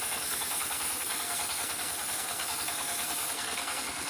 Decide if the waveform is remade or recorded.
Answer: remade